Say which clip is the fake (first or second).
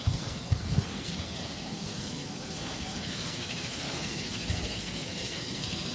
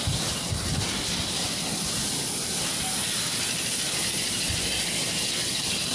first